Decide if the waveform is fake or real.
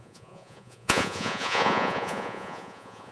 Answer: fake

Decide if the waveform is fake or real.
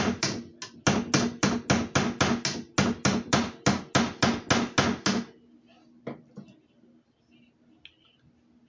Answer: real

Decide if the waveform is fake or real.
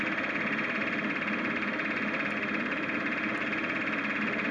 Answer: real